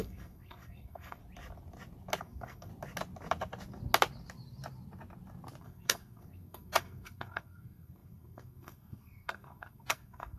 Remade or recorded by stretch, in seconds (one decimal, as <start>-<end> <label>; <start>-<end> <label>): 0.0-1.2 remade; 1.2-2.2 recorded; 2.2-2.7 remade; 2.7-5.6 recorded; 5.6-10.4 remade